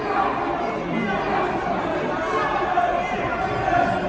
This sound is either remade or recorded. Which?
recorded